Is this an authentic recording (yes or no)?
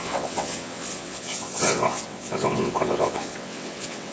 no